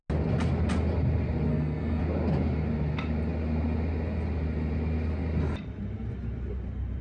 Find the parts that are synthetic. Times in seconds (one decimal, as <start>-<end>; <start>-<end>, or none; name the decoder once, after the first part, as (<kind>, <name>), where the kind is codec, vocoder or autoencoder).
1.5-2.0 (codec, SNAC)